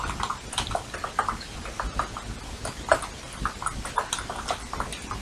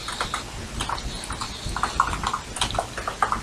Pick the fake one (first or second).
first